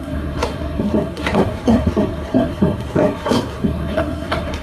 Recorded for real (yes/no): no